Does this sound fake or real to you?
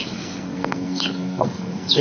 fake